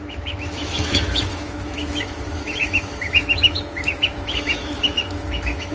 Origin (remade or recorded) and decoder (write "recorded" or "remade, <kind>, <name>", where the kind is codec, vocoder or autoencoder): remade, autoencoder, DAC-VAE